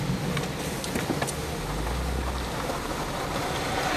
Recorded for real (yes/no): yes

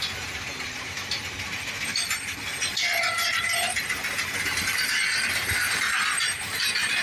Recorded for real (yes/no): yes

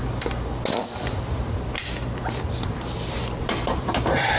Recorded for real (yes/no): no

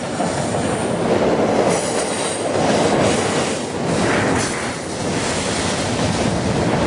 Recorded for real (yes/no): no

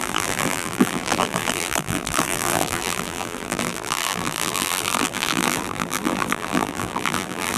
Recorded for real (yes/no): no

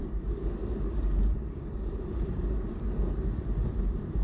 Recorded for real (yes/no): no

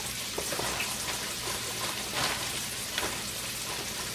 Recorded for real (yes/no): no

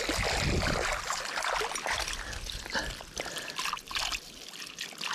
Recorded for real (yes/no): yes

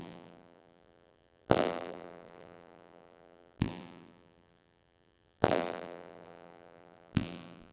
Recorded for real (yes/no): no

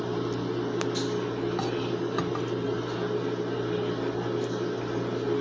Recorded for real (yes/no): yes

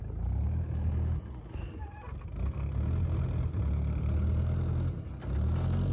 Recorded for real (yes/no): yes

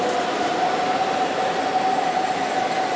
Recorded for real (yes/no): yes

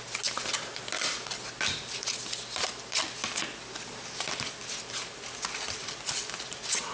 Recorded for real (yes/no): yes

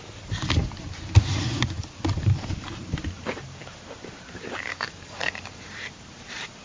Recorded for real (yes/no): no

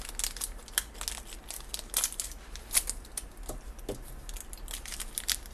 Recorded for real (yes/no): yes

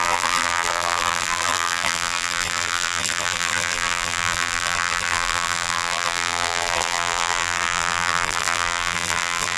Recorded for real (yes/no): no